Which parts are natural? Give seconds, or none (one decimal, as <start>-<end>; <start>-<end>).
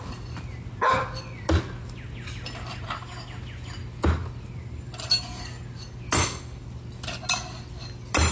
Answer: 0.0-8.3